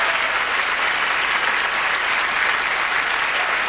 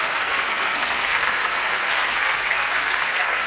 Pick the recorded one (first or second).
first